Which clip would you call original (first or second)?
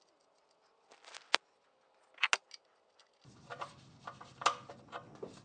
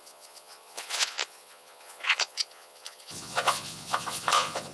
first